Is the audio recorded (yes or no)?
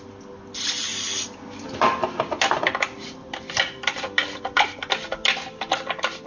yes